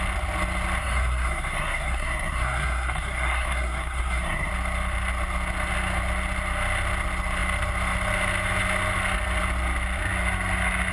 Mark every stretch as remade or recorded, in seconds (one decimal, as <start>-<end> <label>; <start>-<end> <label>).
0.0-0.8 recorded; 0.8-4.5 remade; 4.5-10.9 recorded